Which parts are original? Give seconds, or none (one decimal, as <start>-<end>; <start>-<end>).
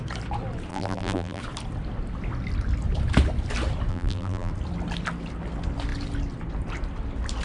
0.0-0.7; 1.4-3.9; 4.5-7.4